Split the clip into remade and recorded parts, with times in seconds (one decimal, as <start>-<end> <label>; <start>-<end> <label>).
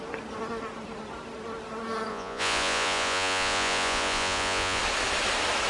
0.0-2.1 recorded; 2.1-4.8 remade; 4.8-5.7 recorded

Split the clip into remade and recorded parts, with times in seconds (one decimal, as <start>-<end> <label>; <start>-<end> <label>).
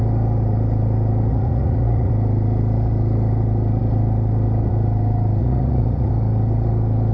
0.0-1.3 recorded; 1.3-2.1 remade; 2.1-5.4 recorded; 5.4-6.1 remade; 6.1-7.1 recorded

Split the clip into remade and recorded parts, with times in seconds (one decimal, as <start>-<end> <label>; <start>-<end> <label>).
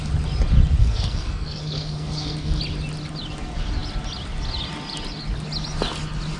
0.0-0.8 recorded; 0.8-2.6 remade; 2.6-6.4 recorded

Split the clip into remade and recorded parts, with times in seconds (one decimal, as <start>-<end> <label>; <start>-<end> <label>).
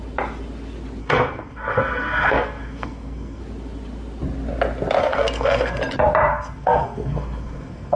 0.0-1.0 recorded; 1.0-3.4 remade; 3.4-5.0 recorded; 5.0-5.8 remade; 5.8-6.3 recorded; 6.3-8.0 remade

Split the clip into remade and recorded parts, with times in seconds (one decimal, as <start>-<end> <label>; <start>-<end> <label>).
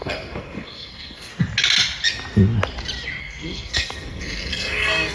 0.0-1.3 remade; 1.3-3.2 recorded; 3.2-5.1 remade